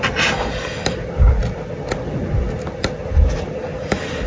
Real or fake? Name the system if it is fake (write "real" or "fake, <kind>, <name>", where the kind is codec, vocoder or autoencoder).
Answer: real